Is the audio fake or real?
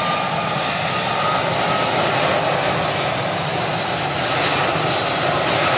real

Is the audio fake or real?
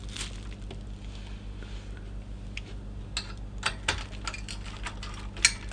real